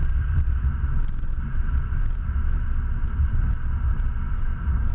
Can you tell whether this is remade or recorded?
remade